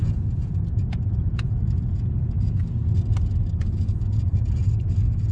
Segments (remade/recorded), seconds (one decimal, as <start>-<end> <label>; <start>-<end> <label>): 0.0-2.6 remade; 2.6-3.6 recorded; 3.6-5.3 remade